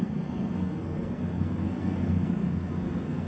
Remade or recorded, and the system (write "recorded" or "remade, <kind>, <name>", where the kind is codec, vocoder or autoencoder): remade, codec, SNAC